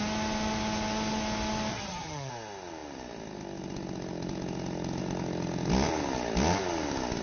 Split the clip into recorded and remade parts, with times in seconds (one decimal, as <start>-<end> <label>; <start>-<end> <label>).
0.0-1.7 recorded; 1.7-2.3 remade; 2.3-7.2 recorded